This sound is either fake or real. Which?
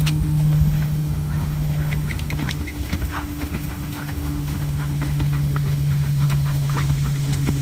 fake